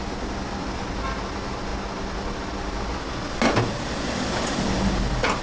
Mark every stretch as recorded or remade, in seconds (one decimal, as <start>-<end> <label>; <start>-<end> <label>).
0.0-5.4 recorded